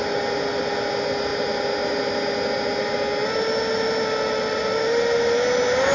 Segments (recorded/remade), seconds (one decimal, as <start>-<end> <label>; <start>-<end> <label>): 0.0-5.9 recorded